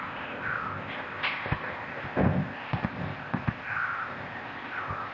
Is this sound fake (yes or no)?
yes